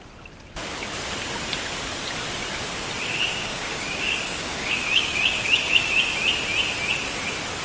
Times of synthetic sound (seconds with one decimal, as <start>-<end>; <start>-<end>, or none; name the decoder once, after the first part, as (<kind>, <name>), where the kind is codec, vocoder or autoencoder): 3.3-6.0 (codec, DAC)